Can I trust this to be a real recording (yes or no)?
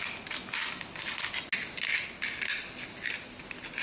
yes